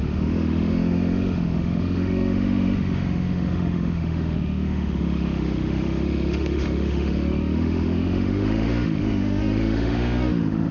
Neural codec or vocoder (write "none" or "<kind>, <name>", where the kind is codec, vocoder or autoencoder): autoencoder, DAC-VAE